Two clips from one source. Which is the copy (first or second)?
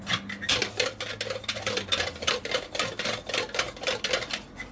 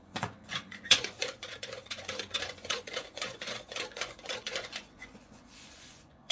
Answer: second